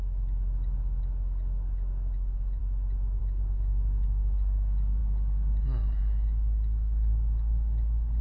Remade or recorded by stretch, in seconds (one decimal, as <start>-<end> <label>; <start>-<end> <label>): 0.0-2.6 remade; 2.6-3.2 recorded; 3.2-8.2 remade

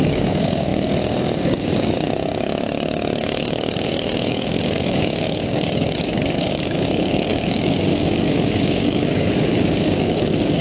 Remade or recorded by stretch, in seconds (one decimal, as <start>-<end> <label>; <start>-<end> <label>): 0.0-10.6 remade

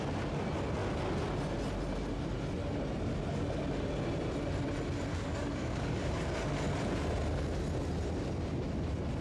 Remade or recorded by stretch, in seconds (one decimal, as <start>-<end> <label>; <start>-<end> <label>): 0.0-5.1 recorded; 5.1-6.1 remade; 6.1-9.2 recorded

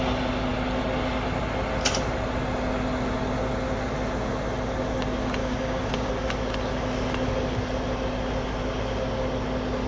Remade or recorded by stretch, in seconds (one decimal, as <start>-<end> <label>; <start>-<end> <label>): 0.0-5.4 recorded; 5.4-6.1 remade; 6.1-9.9 recorded

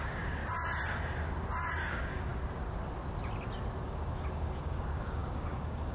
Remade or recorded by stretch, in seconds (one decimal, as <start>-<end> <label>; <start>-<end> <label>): 0.0-0.4 remade; 0.4-1.9 recorded; 1.9-2.3 remade; 2.3-3.8 recorded; 3.8-5.9 remade

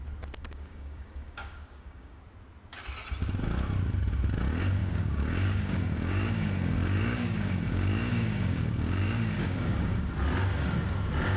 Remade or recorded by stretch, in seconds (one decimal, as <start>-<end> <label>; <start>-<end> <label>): 0.0-0.4 recorded; 0.4-2.2 remade; 2.2-4.8 recorded; 4.8-10.0 remade; 10.0-11.4 recorded

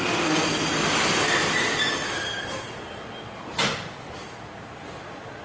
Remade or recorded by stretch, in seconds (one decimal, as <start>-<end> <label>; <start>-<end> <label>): 0.0-5.4 recorded